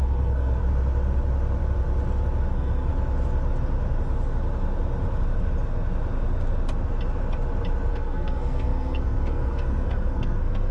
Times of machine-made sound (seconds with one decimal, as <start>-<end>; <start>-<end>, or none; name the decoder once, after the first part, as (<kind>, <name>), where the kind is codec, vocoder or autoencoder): 0.0-0.6 (codec, SNAC); 2.5-2.9; 7.9-10.7